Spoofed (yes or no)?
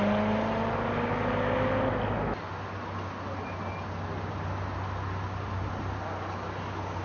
no